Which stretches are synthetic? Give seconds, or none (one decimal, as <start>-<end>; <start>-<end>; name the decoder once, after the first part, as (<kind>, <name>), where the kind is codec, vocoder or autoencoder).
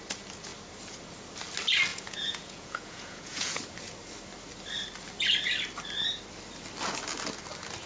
1.9-3.6 (vocoder, Vocos)